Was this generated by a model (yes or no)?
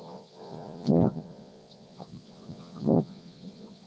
yes